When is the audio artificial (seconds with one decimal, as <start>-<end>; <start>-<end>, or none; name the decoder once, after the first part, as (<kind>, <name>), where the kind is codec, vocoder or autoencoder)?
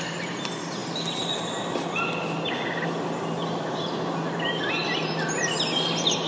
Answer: none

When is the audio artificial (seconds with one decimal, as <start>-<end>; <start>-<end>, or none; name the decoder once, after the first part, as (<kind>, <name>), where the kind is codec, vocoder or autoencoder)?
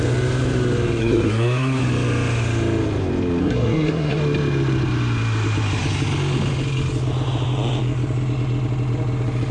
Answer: 1.0-1.8 (codec, SNAC); 3.4-4.2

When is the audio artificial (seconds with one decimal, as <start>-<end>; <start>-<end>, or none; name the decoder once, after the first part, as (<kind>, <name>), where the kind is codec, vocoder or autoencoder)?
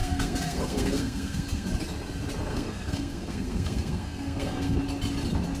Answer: 0.0-1.7 (codec, SNAC); 2.5-4.8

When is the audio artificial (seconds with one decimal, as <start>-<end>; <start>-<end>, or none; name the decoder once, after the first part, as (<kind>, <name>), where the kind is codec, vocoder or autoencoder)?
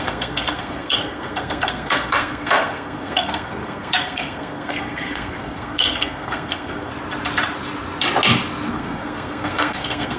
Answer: 0.0-6.9 (codec, SNAC); 8.7-10.2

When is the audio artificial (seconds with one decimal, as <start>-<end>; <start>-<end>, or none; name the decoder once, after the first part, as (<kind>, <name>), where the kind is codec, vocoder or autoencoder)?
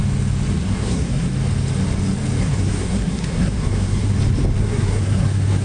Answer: 0.6-1.3 (codec, SNAC); 2.4-4.1; 4.6-5.6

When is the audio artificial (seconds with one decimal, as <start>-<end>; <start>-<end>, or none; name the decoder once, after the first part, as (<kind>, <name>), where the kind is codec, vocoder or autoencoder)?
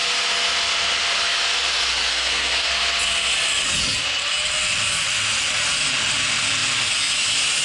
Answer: 2.1-2.7 (codec, SNAC)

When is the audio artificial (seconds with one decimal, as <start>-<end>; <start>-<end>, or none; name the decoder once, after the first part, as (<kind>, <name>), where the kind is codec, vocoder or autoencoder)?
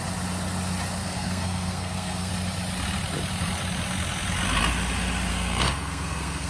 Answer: 1.0-2.3 (codec, SNAC); 5.3-6.5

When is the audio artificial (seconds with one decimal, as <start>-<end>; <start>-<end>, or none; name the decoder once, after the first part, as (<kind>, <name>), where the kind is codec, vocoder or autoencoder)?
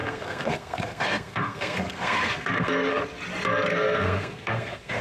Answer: 0.0-3.0 (codec, SNAC); 3.7-5.0